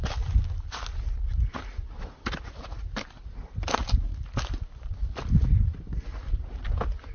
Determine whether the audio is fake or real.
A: real